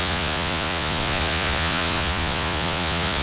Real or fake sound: fake